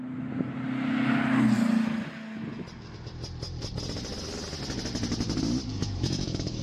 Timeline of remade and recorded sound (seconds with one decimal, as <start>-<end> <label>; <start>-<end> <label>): 0.0-5.7 recorded; 5.7-6.6 remade